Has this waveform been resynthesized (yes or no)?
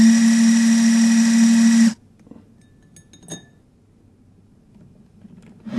no